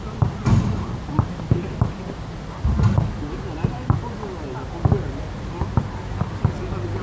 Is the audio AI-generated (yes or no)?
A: no